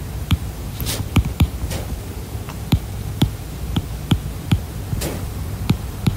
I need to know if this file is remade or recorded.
remade